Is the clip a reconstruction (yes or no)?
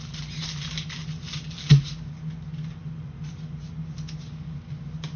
no